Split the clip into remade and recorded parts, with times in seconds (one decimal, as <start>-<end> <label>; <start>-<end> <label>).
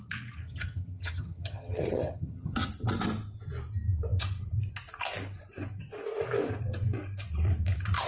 0.0-0.4 recorded; 0.4-2.7 remade; 2.7-8.1 recorded